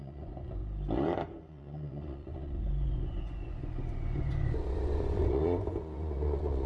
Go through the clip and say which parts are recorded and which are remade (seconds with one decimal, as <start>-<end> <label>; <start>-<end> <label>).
0.0-0.6 remade; 0.6-1.4 recorded; 1.4-6.7 remade